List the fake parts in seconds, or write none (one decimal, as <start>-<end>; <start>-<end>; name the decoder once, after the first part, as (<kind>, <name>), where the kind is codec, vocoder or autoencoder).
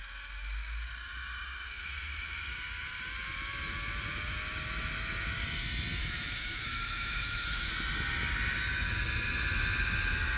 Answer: 6.0-7.7 (autoencoder, DAC-VAE)